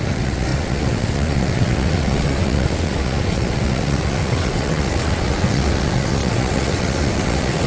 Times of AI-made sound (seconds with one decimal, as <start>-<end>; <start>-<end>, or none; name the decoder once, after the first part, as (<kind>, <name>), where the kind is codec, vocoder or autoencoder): 0.0-7.7 (vocoder, WaveNeXt)